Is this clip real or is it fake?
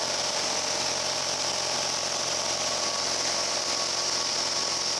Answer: real